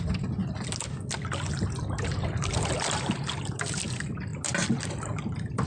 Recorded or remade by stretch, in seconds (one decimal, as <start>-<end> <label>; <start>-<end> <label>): 0.0-5.7 recorded